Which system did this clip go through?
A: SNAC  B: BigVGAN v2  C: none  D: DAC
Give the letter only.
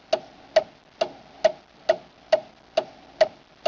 C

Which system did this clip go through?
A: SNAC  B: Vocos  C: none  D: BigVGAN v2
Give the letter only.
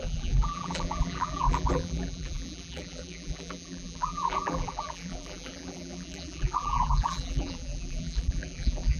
D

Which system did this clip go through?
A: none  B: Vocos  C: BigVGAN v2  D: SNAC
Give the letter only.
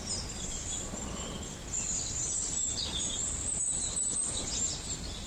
A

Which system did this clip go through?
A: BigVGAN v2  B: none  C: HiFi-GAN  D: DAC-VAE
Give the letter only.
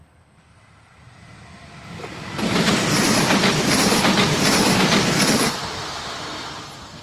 A